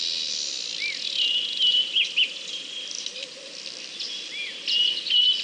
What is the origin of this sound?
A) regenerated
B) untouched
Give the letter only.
B